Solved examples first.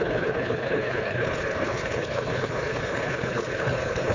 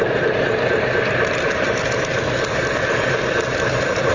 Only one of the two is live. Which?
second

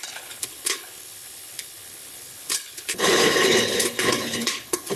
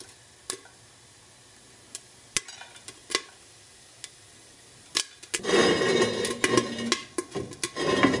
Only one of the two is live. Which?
second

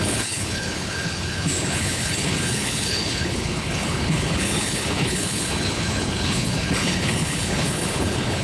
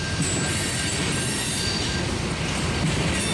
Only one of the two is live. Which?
second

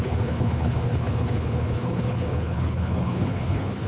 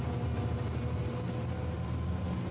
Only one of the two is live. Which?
second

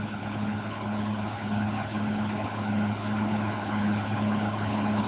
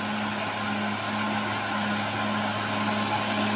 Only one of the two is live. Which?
second